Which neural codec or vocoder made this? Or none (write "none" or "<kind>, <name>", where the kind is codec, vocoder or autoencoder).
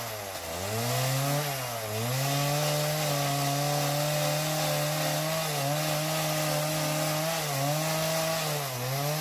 none